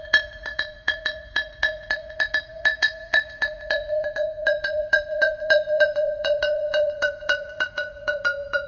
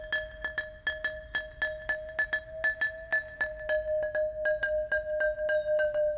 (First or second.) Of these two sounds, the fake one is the first